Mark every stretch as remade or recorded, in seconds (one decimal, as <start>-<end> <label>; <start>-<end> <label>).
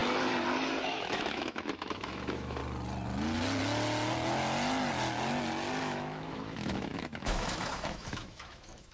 0.0-0.9 recorded; 0.9-2.6 remade; 2.6-5.8 recorded; 5.8-8.9 remade